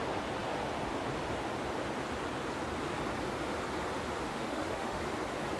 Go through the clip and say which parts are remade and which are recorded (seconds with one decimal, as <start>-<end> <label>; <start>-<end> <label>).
0.0-4.3 recorded; 4.3-5.0 remade; 5.0-5.6 recorded